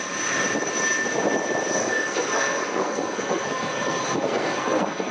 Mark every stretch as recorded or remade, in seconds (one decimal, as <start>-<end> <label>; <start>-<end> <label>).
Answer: 0.0-1.8 recorded; 1.8-5.1 remade

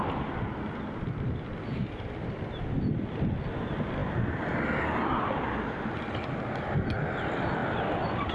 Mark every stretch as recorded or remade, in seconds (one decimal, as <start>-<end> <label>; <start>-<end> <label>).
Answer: 0.0-8.3 recorded